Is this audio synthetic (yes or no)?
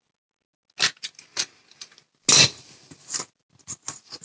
no